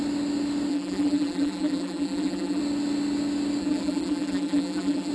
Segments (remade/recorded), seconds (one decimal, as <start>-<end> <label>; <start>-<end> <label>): 0.0-0.7 recorded; 0.7-2.6 remade; 2.6-3.6 recorded; 3.6-5.1 remade